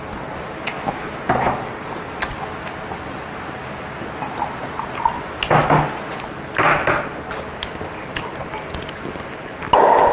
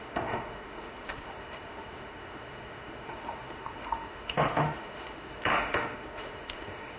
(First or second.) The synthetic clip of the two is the second